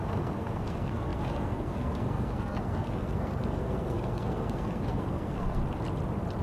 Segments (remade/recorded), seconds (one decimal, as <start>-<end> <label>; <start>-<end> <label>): 0.0-5.6 remade; 5.6-6.4 recorded